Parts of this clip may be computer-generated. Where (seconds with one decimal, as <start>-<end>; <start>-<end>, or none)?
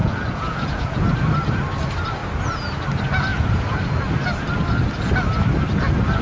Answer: 0.0-1.1; 3.3-3.8